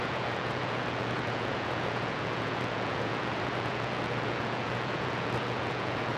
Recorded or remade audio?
remade